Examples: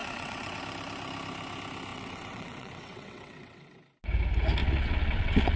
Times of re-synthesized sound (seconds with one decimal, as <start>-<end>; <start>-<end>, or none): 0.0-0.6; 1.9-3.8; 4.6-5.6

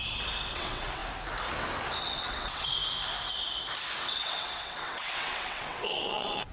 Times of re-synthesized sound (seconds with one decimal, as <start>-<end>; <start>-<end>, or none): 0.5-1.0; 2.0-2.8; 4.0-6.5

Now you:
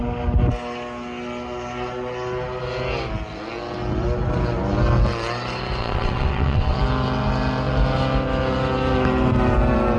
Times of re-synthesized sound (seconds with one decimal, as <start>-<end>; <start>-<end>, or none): 5.8-6.8

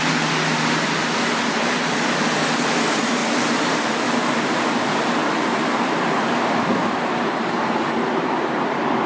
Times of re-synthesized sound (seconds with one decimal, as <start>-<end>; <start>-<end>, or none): none